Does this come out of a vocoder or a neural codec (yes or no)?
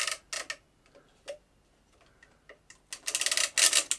no